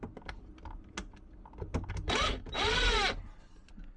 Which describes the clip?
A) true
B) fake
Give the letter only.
A